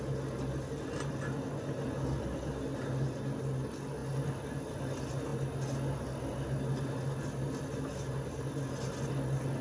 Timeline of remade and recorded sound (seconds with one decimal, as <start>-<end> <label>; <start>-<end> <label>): 0.0-9.6 recorded